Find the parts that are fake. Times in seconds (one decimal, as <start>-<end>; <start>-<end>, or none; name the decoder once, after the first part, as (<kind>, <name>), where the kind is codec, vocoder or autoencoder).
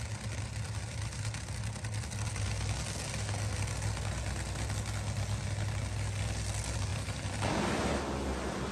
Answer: none